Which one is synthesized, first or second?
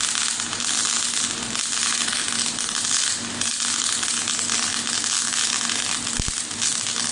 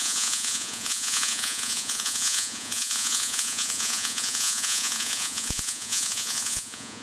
second